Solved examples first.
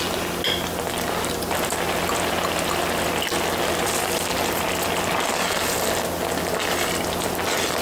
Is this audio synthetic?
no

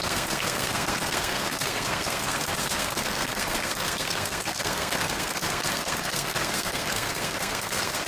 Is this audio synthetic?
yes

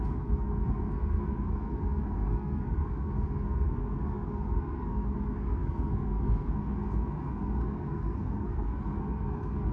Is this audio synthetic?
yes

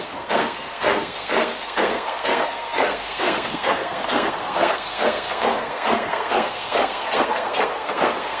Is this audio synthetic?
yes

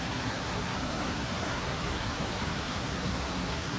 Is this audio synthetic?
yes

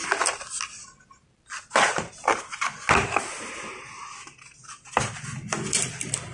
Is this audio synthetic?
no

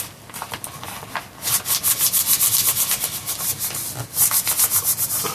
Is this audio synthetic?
no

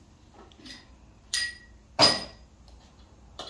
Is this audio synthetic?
no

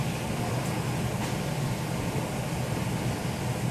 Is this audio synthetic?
no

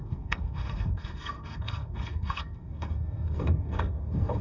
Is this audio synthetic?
yes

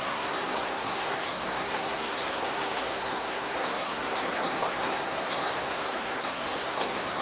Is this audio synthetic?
yes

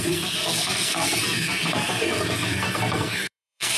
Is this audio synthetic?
yes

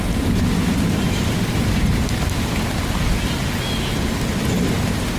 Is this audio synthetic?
no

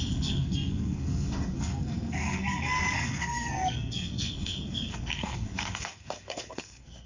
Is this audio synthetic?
yes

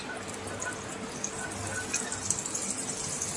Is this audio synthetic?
no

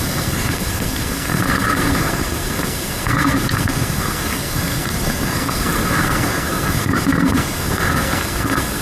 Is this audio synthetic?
yes